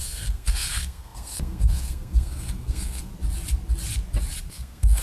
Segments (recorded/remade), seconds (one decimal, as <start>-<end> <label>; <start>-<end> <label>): 0.0-3.1 remade; 3.1-4.5 recorded; 4.5-5.0 remade